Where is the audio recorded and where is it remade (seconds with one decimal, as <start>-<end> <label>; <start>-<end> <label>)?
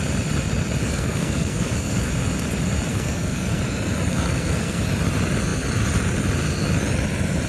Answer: 0.0-0.8 recorded; 0.8-2.1 remade; 2.1-2.9 recorded; 2.9-3.6 remade; 3.6-4.1 recorded; 4.1-4.8 remade; 4.8-7.5 recorded